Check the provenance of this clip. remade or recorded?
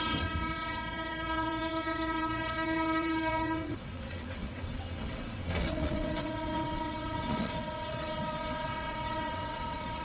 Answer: remade